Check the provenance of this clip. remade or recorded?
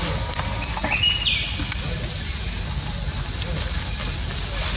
remade